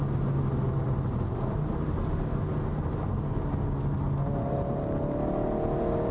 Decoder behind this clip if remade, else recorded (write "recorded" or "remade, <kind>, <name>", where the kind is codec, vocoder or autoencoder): recorded